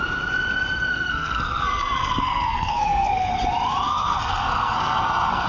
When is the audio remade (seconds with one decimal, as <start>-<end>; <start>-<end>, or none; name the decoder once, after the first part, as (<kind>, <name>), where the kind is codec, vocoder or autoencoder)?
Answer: 0.9-3.3 (codec, SNAC); 3.9-5.5